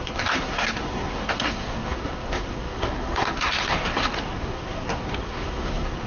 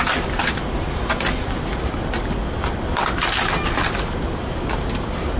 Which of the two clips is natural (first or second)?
second